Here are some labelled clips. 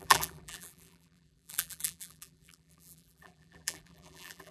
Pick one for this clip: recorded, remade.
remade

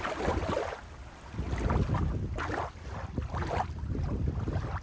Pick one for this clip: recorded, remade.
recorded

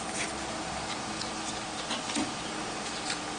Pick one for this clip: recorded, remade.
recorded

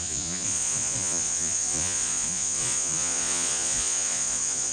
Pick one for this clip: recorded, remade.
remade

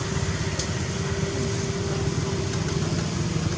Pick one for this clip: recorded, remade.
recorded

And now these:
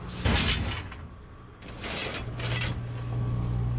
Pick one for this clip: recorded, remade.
recorded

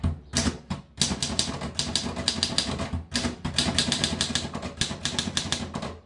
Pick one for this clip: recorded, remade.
recorded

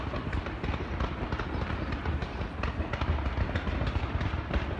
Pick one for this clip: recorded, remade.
recorded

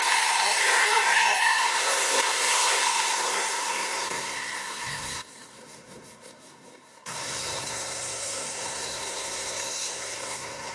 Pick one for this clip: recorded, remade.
remade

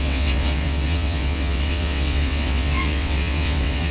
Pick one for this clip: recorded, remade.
remade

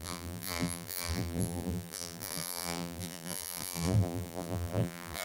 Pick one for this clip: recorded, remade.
remade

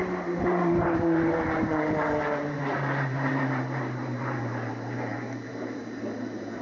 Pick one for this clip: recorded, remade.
remade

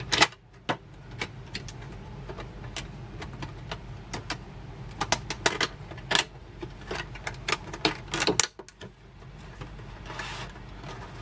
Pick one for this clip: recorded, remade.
recorded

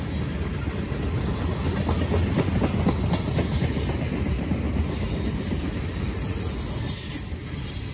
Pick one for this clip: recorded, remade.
recorded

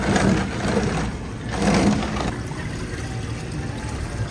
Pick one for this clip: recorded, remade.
recorded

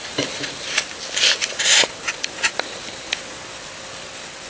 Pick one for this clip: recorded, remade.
recorded